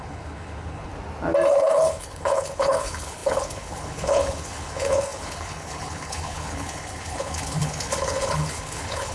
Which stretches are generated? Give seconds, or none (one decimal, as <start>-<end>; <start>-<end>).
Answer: 0.0-0.9; 1.5-9.1